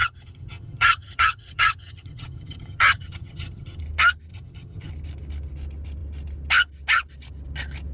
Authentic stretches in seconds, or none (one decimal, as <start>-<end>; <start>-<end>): 3.8-4.3; 4.9-7.9